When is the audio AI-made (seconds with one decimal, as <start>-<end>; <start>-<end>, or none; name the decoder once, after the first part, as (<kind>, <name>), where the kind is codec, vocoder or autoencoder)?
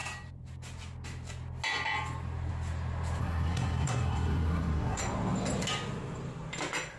3.2-5.0 (codec, SNAC)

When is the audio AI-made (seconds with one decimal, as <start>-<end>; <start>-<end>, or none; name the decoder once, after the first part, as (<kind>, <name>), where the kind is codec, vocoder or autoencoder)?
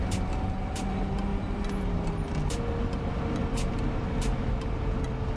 none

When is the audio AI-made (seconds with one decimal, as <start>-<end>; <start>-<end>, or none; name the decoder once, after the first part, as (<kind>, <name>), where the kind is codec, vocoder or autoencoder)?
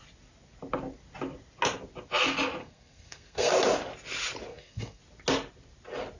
2.6-3.5 (codec, SNAC); 4.5-5.0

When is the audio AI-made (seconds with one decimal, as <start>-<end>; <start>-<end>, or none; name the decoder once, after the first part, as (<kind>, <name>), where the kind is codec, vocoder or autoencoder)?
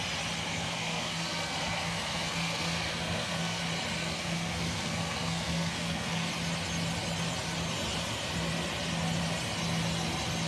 0.5-3.6 (codec, SNAC); 4.0-6.3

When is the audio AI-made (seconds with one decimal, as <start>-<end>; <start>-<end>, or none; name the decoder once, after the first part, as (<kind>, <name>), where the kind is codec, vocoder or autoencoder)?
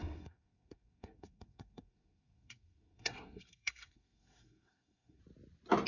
0.0-5.2 (codec, SNAC)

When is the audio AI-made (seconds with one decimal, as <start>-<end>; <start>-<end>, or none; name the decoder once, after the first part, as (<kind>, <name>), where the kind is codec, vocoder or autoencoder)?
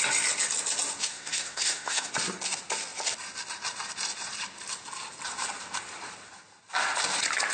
1.1-2.1 (codec, SNAC)